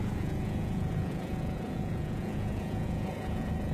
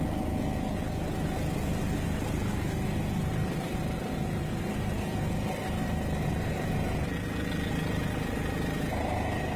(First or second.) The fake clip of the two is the first